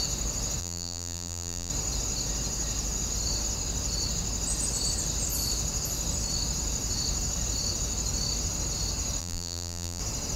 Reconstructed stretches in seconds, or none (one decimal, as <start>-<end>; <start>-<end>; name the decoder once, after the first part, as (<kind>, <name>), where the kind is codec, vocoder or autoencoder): 0.6-1.7 (vocoder, BigVGAN v2); 9.2-10.0